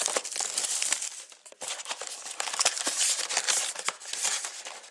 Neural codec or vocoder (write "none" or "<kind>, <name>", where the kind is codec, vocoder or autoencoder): none